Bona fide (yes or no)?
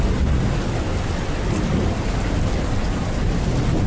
yes